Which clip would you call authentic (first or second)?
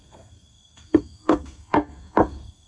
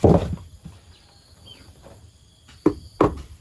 second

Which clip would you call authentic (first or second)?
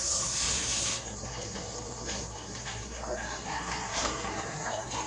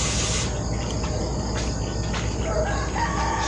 second